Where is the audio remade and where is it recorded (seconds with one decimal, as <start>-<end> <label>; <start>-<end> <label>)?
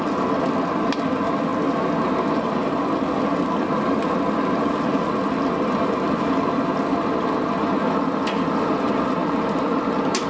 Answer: 0.0-9.2 recorded; 9.2-9.7 remade; 9.7-10.3 recorded